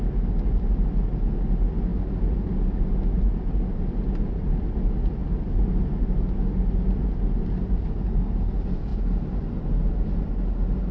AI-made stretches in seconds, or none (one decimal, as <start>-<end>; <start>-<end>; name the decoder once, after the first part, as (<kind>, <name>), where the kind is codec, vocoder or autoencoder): none